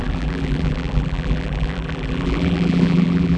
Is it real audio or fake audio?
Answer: fake